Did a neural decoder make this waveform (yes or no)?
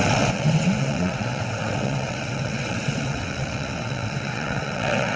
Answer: yes